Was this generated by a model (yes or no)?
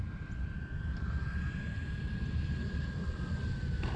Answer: no